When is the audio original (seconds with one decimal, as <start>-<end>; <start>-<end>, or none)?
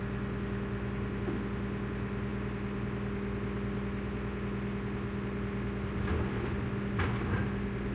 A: 0.0-7.9